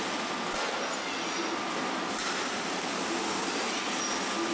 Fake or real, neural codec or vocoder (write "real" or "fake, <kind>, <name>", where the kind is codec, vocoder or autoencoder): real